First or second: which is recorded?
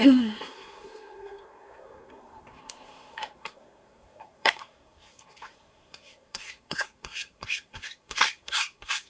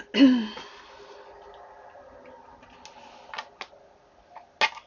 second